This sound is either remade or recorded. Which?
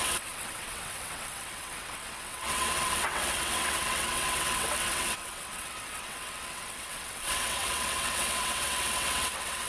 remade